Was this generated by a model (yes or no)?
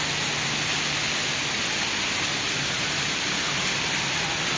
no